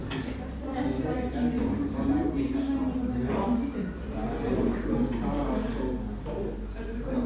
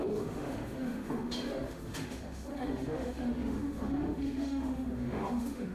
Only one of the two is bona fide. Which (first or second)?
first